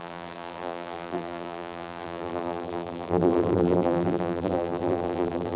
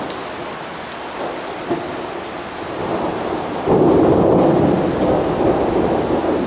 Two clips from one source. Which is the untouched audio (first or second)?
second